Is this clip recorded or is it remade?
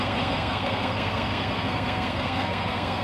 remade